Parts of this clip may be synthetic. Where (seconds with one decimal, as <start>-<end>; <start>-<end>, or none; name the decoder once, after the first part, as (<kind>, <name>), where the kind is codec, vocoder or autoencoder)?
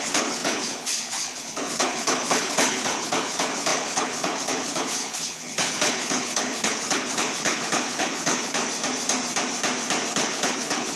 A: 0.0-8.6 (codec, HILCodec); 10.1-11.0